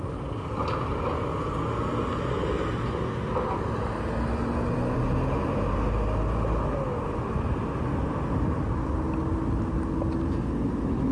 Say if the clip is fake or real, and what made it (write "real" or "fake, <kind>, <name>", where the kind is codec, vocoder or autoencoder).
real